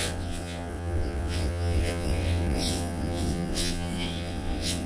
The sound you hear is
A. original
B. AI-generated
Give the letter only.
B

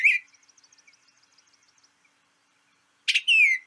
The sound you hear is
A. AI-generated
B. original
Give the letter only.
B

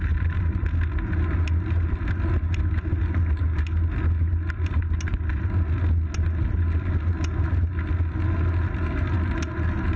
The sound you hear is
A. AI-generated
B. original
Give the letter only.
B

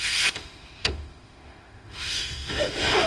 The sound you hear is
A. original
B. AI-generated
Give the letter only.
B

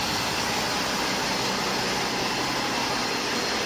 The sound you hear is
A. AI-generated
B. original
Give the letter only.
B